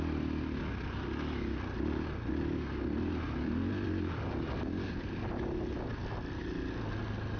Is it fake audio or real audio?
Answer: real